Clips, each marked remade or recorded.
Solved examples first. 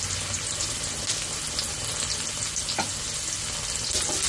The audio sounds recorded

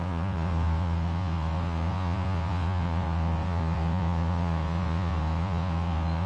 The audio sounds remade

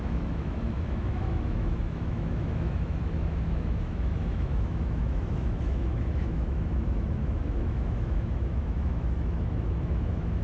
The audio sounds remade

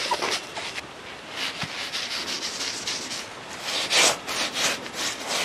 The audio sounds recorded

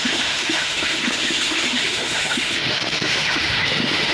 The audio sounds remade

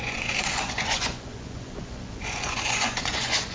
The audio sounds remade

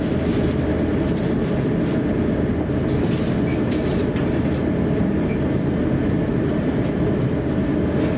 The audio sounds recorded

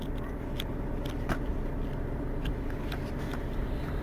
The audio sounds recorded